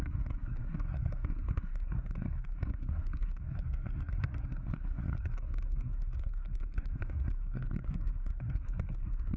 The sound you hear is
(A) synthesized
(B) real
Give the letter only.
A